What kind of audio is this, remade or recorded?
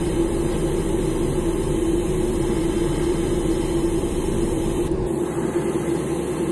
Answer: remade